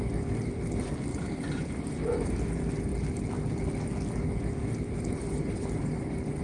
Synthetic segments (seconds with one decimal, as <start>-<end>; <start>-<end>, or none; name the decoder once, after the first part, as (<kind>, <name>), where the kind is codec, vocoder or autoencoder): 1.1-2.4 (vocoder, BigVGAN v2); 4.6-6.4